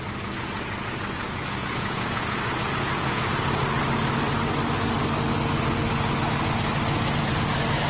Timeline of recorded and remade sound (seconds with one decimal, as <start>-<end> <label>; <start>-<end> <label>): 0.0-1.6 recorded; 1.6-3.3 remade; 3.3-7.9 recorded